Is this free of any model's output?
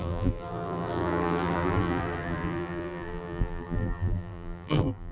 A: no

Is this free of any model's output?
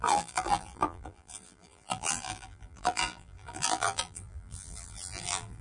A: no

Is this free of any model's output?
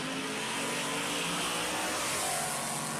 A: yes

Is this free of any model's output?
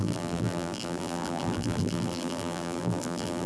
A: no